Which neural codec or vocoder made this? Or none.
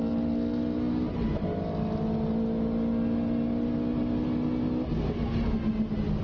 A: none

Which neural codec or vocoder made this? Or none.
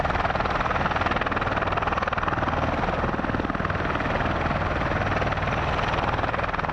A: none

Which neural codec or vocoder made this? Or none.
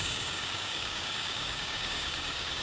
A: codec, DAC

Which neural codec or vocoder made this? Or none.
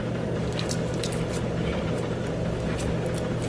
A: none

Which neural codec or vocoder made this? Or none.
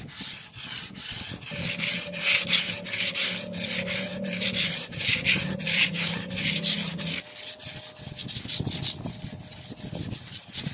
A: none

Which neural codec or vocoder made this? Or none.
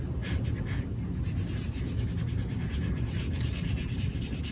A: none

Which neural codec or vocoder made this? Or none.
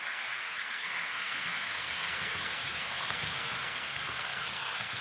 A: codec, SNAC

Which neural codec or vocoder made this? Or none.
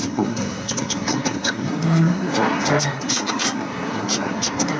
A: codec, SNAC